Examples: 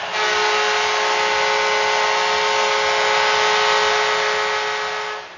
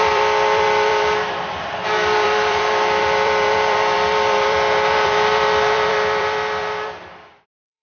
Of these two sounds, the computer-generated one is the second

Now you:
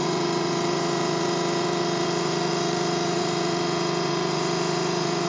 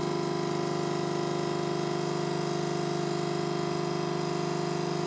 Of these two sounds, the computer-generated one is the first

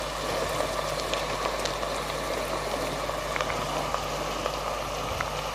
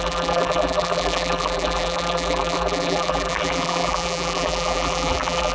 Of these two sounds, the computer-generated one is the second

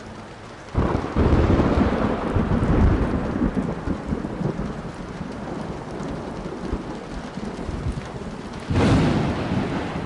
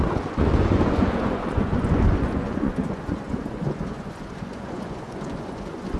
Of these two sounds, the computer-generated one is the second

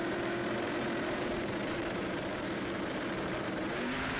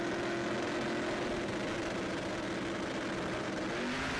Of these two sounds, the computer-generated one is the first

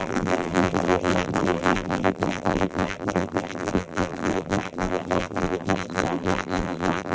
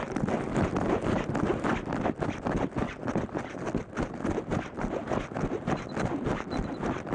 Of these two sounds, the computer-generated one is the first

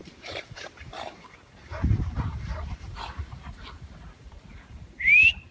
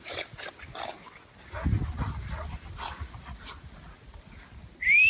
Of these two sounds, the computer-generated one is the first